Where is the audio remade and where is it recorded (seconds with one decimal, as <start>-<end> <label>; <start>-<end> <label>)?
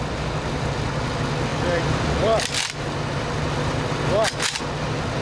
0.0-5.2 recorded